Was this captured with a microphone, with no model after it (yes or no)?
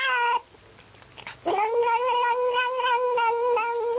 yes